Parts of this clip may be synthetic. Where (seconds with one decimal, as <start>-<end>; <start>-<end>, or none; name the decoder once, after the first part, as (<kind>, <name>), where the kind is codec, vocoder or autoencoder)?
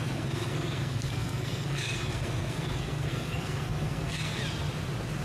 0.0-4.4 (codec, SNAC)